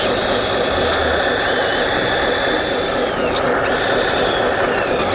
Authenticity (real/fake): real